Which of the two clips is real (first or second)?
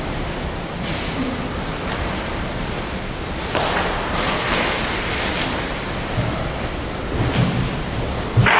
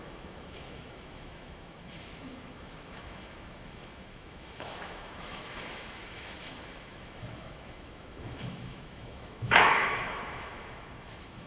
first